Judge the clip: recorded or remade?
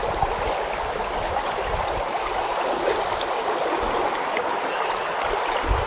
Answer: recorded